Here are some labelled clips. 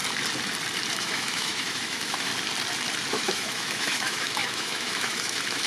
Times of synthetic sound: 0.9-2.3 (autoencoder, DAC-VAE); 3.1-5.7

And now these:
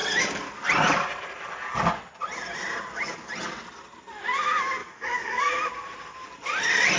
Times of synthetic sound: 4.8-5.5 (codec, DAC)

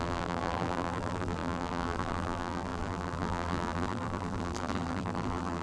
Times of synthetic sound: 0.0-5.6 (vocoder, BigVGAN v2)

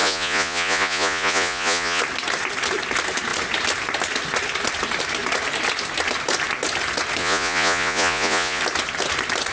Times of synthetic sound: 0.0-2.0 (vocoder, Vocos); 7.2-8.6

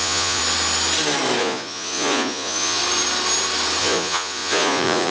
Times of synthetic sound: 0.0-0.4 (vocoder, Vocos); 1.4-2.8; 3.8-5.1

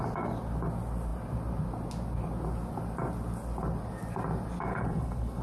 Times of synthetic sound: 4.7-5.4 (codec, HILCodec)

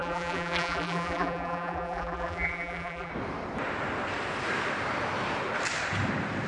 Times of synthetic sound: 0.0-3.1 (vocoder, BigVGAN v2)

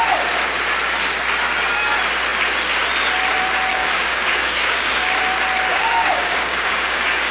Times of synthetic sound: 3.7-5.1 (codec, DAC); 5.7-7.3